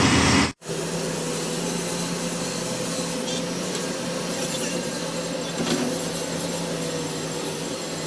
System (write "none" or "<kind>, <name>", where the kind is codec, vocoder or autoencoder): none